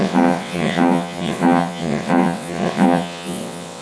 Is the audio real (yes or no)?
no